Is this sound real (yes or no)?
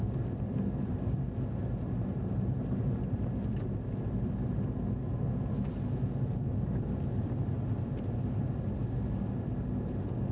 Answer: yes